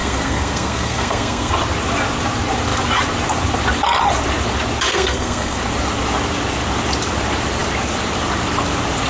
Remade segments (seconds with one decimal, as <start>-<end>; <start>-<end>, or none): 0.0-1.5; 4.9-5.6